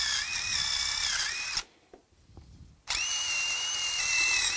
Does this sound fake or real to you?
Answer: fake